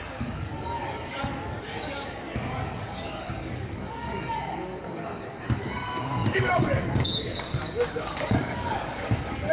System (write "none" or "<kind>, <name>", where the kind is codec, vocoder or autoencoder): codec, DAC